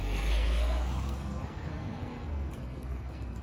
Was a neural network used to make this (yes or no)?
yes